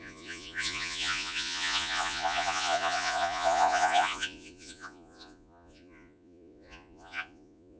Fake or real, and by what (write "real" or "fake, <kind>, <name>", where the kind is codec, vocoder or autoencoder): fake, vocoder, Vocos